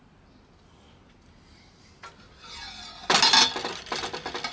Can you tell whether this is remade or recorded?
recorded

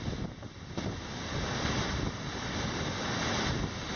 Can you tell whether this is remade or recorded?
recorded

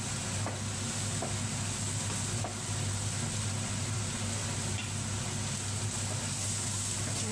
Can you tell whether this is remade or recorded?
recorded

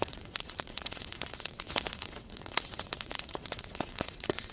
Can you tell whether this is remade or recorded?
remade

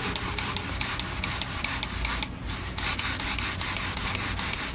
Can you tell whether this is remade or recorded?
recorded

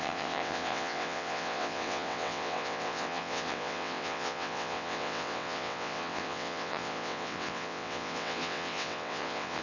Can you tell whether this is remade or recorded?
remade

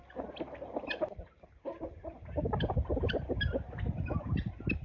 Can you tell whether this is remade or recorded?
recorded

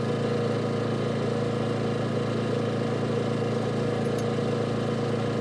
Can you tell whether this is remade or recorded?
recorded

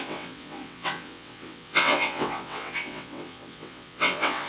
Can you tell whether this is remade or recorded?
remade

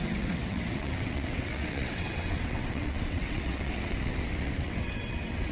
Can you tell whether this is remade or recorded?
remade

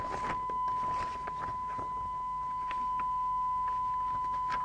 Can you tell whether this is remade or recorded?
recorded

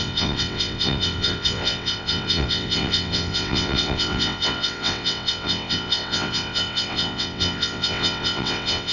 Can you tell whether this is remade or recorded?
remade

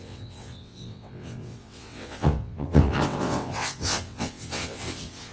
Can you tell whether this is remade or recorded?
remade